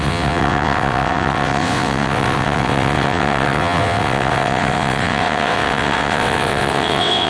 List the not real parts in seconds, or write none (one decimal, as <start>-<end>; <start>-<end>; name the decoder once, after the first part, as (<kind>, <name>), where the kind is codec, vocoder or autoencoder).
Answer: 0.0-7.3 (vocoder, WaveNeXt)